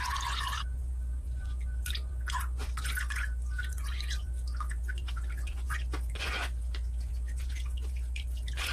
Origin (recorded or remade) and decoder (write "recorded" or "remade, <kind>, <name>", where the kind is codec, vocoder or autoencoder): remade, vocoder, Vocos